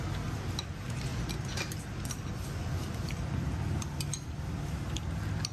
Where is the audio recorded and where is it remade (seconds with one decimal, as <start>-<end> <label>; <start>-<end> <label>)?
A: 0.0-1.1 recorded; 1.1-3.6 remade; 3.6-5.5 recorded